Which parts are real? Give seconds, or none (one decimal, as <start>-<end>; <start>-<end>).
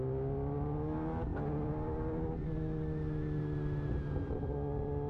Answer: 0.0-5.1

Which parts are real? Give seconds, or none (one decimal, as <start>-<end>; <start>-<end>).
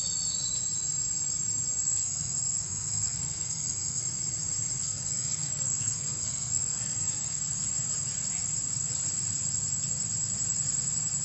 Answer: 0.0-1.8; 4.0-4.8; 7.4-11.2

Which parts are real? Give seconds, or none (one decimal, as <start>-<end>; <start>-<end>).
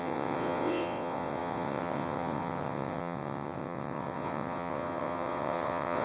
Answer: none